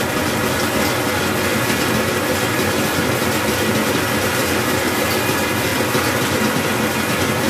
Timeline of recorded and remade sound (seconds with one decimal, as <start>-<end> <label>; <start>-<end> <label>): 0.0-7.5 recorded